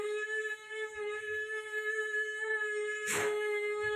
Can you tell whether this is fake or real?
fake